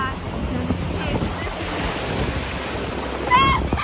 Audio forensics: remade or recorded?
recorded